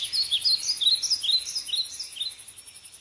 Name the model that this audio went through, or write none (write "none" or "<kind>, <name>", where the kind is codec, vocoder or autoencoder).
none